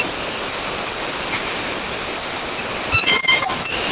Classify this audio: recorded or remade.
remade